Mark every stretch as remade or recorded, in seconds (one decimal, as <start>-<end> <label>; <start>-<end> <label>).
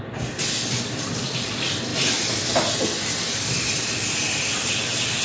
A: 0.0-5.2 recorded